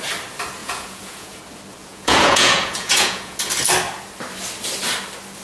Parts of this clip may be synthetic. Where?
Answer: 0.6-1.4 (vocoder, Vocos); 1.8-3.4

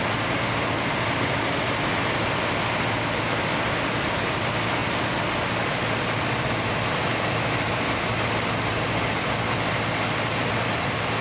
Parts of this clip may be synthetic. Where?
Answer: none

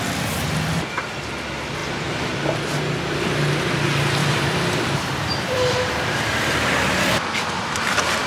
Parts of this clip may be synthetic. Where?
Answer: 4.2-8.3 (vocoder, BigVGAN v2)

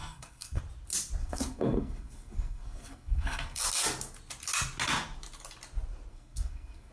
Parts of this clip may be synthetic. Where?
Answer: 0.0-0.6 (codec, SNAC); 1.2-3.6; 6.1-6.9

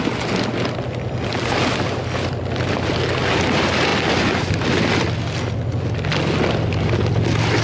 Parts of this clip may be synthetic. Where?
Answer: none

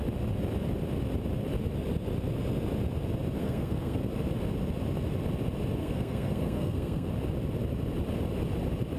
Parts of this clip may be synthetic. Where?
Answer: 3.4-4.0 (codec, SNAC); 5.8-7.1

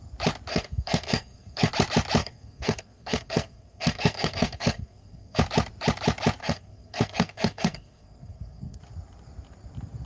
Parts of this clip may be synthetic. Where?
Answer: 0.5-1.7 (codec, SNAC); 2.2-5.4; 6.4-8.8

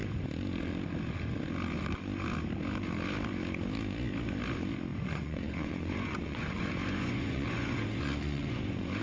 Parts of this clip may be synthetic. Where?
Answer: 4.9-9.0 (vocoder, Vocos)